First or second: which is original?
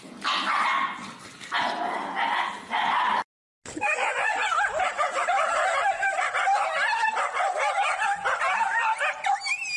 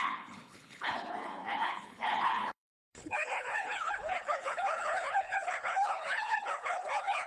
first